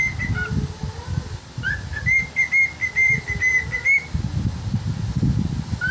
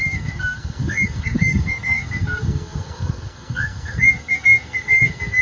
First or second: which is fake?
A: second